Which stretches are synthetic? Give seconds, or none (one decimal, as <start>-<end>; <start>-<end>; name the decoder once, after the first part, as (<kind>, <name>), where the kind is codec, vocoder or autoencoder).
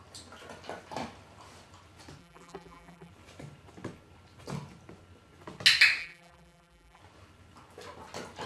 2.2-3.1 (vocoder, BigVGAN v2); 6.0-7.0